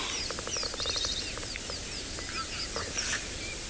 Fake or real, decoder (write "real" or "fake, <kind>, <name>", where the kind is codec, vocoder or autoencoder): real